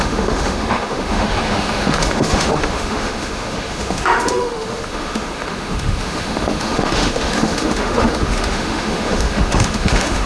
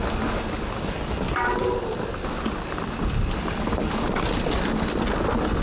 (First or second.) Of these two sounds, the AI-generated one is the first